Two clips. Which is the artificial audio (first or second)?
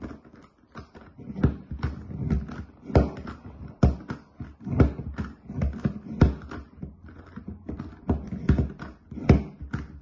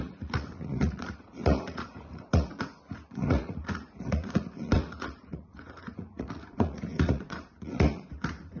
second